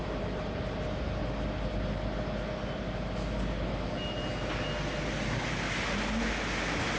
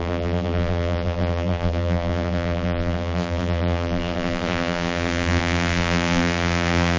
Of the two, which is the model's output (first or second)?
second